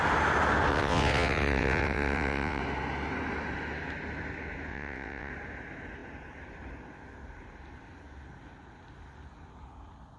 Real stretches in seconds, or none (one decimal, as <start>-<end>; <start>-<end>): 0.0-0.7; 2.6-4.7; 5.3-10.2